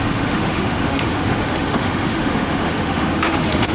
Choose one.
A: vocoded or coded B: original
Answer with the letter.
A